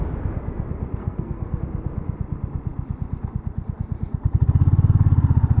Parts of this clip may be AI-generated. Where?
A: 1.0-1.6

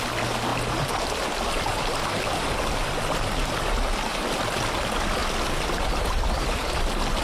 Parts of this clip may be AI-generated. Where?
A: 0.5-3.2; 4.1-4.7

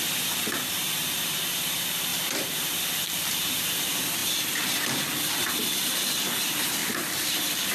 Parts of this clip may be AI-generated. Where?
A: 2.1-2.7; 6.8-7.7